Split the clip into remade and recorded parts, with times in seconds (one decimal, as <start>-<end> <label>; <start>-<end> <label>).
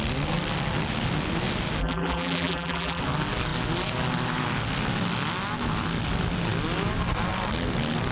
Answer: 0.0-1.8 recorded; 1.8-3.0 remade; 3.0-8.1 recorded